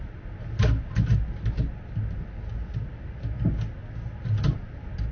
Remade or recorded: recorded